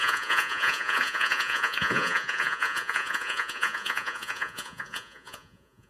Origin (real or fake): fake